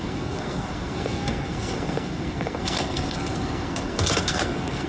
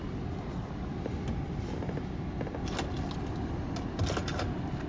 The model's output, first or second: first